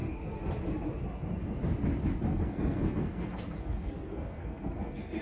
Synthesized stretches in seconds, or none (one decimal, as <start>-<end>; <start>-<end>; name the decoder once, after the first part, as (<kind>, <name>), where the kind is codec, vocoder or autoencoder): 2.3-5.2 (codec, SNAC)